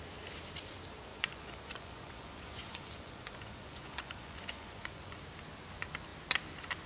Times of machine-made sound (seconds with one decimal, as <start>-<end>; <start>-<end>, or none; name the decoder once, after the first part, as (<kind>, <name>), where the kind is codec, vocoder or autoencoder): 1.1-5.2 (vocoder, Vocos)